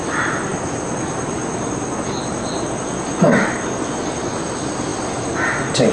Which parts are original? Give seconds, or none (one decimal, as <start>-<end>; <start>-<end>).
0.0-5.9